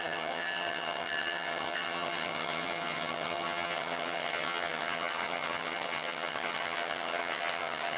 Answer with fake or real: fake